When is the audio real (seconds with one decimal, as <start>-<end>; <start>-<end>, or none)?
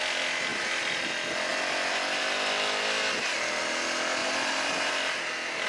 0.0-4.2; 4.9-5.7